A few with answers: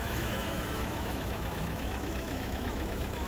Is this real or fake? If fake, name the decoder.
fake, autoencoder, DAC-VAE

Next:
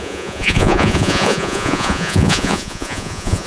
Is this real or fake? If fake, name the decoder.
fake, vocoder, Vocos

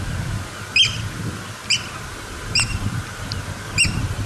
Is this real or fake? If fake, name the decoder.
real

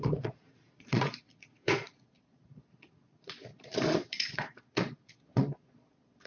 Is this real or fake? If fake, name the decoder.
fake, vocoder, Vocos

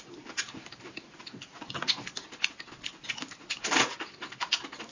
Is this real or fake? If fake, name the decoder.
real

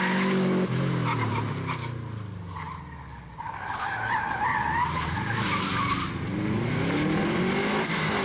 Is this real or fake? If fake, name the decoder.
real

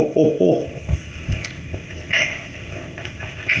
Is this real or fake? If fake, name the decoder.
fake, codec, ZipCodec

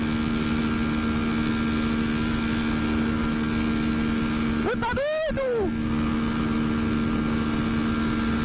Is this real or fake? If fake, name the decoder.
real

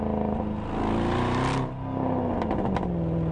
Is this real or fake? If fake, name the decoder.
real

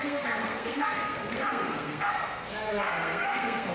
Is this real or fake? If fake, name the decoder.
fake, codec, SNAC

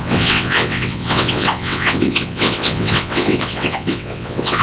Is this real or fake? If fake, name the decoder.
fake, vocoder, WaveNeXt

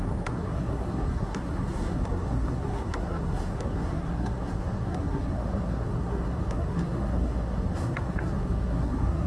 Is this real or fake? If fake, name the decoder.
fake, codec, SNAC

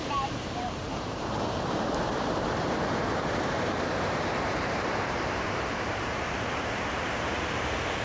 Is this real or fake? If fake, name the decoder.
fake, vocoder, BigVGAN v2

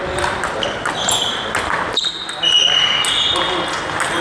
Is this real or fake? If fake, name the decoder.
real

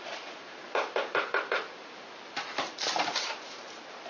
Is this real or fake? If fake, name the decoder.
fake, vocoder, BigVGAN v2